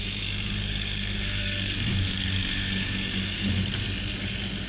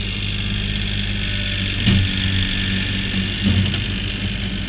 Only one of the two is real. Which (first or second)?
second